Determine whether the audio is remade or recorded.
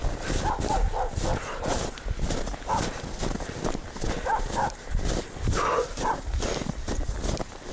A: recorded